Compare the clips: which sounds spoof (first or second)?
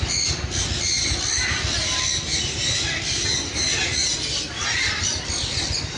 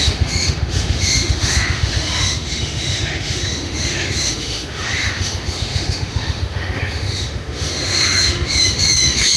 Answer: second